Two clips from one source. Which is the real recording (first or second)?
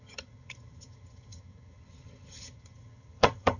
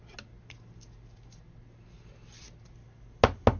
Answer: second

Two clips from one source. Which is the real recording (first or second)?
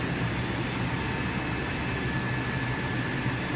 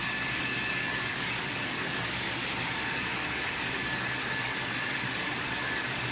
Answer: first